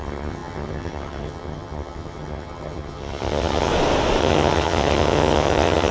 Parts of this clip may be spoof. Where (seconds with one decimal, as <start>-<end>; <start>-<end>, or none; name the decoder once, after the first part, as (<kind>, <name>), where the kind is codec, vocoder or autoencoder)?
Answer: 0.0-3.7 (vocoder, HiFi-GAN); 4.2-5.9